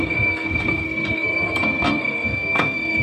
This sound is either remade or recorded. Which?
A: remade